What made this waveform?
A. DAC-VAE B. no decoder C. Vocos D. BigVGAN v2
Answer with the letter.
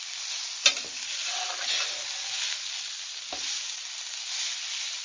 B